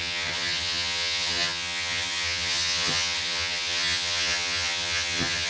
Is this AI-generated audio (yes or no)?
yes